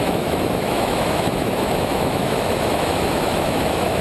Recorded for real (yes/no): no